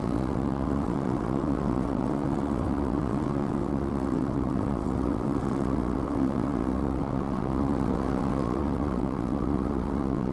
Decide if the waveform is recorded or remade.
remade